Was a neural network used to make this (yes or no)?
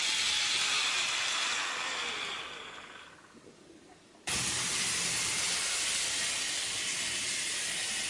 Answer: no